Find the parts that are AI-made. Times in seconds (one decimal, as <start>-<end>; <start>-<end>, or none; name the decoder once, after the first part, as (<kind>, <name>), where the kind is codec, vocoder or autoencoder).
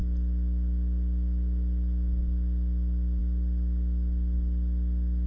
none